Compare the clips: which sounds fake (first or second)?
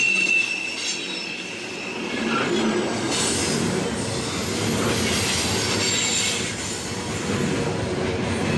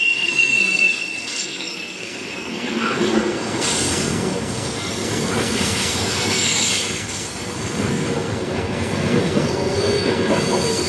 second